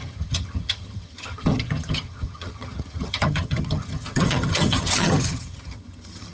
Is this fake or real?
fake